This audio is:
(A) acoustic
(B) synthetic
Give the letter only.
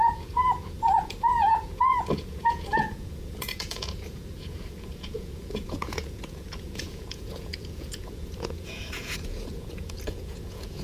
B